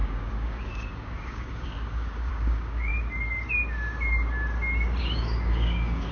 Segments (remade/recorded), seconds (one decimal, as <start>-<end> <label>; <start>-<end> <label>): 0.0-2.9 remade; 2.9-5.0 recorded; 5.0-6.1 remade